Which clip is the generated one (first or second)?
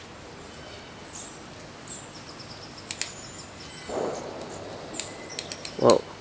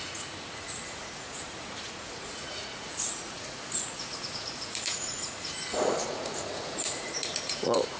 second